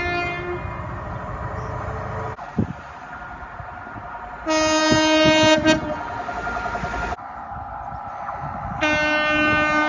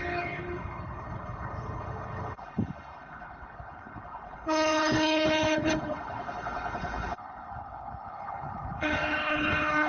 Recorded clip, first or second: first